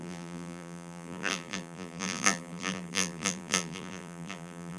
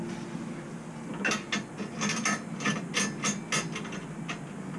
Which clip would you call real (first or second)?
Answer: second